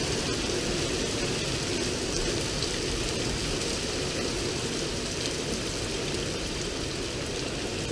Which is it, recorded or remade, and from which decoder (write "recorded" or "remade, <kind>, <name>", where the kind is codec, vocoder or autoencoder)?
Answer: recorded